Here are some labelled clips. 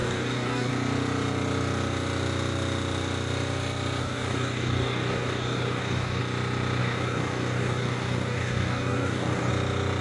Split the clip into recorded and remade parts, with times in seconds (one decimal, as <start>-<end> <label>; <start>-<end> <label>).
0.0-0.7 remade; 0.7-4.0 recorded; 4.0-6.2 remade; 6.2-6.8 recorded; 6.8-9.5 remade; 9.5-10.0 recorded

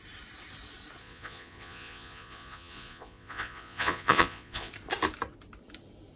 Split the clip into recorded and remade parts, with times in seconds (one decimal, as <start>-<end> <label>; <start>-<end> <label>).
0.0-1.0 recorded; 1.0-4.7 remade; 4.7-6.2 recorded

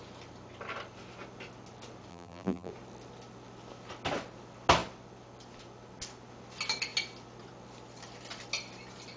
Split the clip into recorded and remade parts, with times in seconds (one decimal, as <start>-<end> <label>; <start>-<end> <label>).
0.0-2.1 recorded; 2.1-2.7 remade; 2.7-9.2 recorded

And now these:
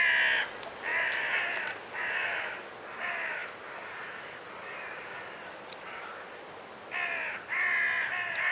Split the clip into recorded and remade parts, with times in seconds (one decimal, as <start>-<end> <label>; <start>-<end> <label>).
0.0-0.9 recorded; 0.9-1.6 remade; 1.6-3.4 recorded; 3.4-6.5 remade; 6.5-8.5 recorded

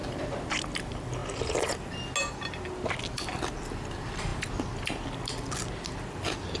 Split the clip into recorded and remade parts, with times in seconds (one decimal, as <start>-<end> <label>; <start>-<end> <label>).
0.0-6.6 recorded

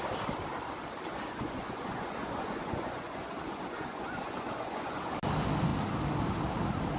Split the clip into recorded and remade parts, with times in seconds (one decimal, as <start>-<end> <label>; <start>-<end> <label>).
0.0-1.1 recorded; 1.1-5.1 remade; 5.1-7.0 recorded

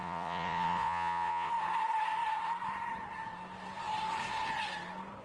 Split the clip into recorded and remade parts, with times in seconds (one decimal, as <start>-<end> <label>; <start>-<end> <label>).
0.0-1.5 remade; 1.5-5.2 recorded

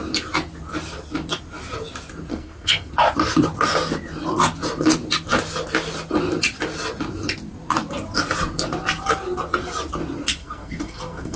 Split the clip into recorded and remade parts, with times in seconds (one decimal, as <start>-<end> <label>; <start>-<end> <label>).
0.0-2.3 recorded; 2.3-2.9 remade; 2.9-10.4 recorded; 10.4-11.4 remade